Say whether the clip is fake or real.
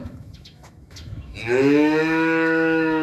fake